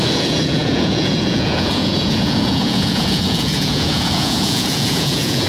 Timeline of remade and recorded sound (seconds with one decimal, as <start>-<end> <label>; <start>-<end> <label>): 0.0-5.5 remade